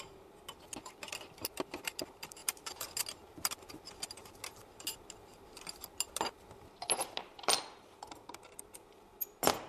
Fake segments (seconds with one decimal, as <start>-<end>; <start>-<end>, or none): none